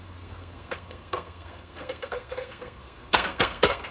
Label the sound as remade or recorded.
remade